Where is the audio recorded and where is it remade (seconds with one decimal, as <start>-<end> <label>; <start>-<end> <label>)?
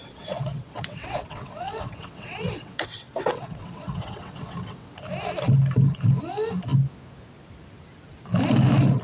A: 0.0-5.0 remade; 5.0-9.0 recorded